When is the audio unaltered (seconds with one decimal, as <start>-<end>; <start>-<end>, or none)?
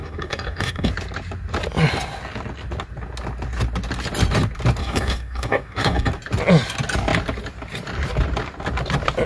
0.9-4.8; 6.1-9.3